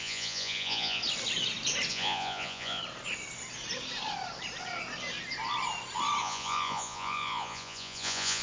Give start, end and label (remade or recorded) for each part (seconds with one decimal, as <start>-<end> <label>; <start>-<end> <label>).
0.0-1.0 remade; 1.0-1.9 recorded; 1.9-2.8 remade; 2.8-6.2 recorded; 6.2-8.4 remade